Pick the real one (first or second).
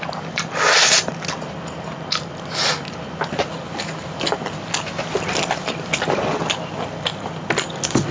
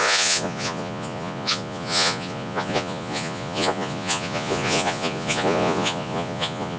first